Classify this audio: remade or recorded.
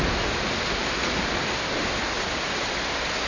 recorded